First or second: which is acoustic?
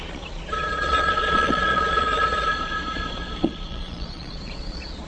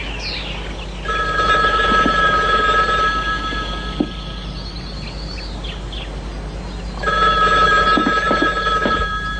second